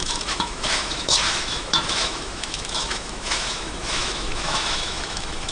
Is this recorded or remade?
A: remade